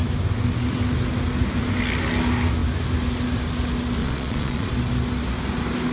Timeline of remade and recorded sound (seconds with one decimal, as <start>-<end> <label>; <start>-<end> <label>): 0.0-4.0 recorded; 4.0-4.7 remade; 4.7-5.9 recorded